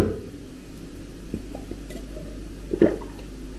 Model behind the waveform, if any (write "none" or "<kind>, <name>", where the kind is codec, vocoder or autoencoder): none